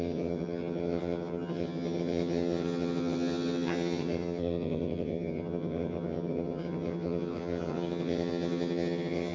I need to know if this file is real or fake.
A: fake